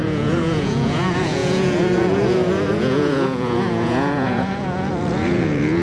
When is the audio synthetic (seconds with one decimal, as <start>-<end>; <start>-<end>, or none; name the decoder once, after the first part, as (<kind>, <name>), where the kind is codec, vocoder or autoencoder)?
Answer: 0.0-5.8 (vocoder, Vocos)